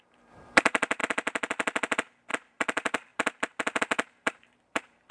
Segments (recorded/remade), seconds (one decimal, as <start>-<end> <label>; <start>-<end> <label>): 0.0-1.0 remade; 1.0-2.3 recorded; 2.3-3.1 remade; 3.1-3.8 recorded; 3.8-5.1 remade